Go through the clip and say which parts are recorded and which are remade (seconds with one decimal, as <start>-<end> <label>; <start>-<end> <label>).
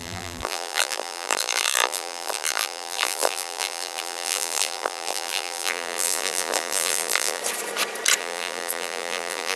0.0-7.4 remade; 7.4-8.2 recorded; 8.2-9.6 remade